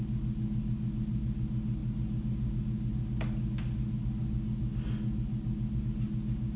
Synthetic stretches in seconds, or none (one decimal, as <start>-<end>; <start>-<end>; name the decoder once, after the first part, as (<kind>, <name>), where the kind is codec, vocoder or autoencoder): none

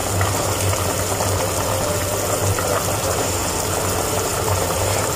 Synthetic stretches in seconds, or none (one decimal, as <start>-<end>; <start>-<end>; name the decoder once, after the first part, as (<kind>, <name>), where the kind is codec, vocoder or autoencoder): 3.0-3.4 (vocoder, BigVGAN v2); 4.1-5.2

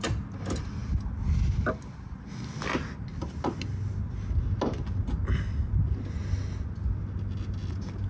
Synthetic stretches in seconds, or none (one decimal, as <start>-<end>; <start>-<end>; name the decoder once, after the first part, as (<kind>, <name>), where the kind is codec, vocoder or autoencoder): none

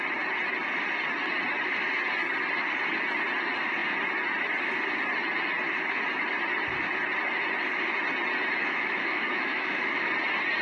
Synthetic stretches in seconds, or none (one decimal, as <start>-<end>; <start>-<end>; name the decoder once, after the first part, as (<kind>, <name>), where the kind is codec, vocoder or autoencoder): 8.6-10.1 (autoencoder, DAC-VAE)

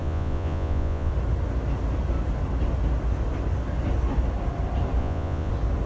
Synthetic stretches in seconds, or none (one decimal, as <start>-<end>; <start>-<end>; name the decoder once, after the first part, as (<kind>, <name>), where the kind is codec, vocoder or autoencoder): 0.0-1.1 (vocoder, Vocos); 5.0-5.5